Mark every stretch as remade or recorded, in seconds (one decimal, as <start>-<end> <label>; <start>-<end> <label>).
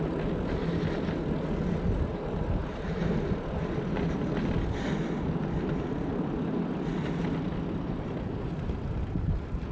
0.0-2.1 recorded; 2.1-3.1 remade; 3.1-9.7 recorded